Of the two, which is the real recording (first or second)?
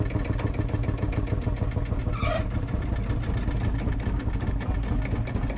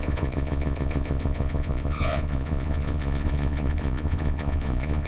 first